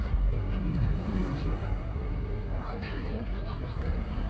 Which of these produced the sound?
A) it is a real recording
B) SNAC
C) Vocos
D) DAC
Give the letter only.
B